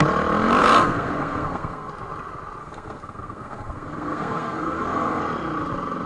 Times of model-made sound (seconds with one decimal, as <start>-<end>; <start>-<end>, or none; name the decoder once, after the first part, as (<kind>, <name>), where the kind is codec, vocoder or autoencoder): 0.6-1.9 (codec, SNAC); 2.6-5.2